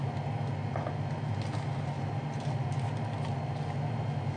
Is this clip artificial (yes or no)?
no